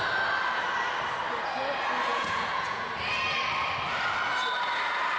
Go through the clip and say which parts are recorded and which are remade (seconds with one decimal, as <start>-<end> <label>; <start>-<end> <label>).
0.0-2.1 recorded; 2.1-2.9 remade; 2.9-5.2 recorded